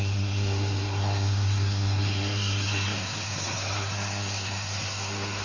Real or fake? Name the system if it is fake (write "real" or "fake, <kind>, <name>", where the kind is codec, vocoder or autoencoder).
fake, codec, SNAC